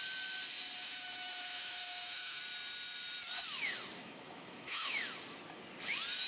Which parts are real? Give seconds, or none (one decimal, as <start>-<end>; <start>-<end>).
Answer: 0.0-0.8; 2.4-4.0; 5.0-6.3